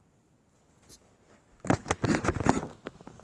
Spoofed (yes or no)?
no